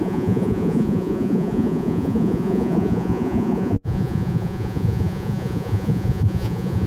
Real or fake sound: fake